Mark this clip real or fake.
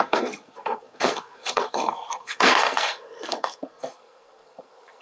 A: fake